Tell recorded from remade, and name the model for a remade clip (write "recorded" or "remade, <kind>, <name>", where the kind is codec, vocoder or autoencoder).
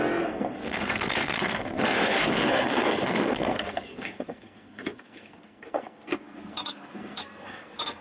remade, codec, SNAC